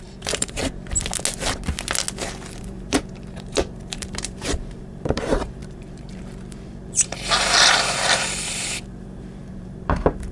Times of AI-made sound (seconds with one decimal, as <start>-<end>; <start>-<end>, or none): 0.0-0.6; 2.6-10.3

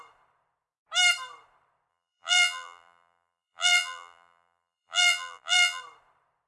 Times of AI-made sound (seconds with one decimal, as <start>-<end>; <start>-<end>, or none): 1.9-5.8